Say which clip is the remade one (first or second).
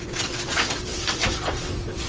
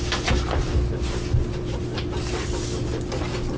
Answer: first